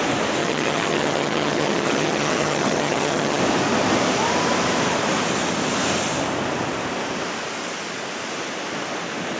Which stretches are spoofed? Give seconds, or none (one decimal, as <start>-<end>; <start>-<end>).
0.4-3.4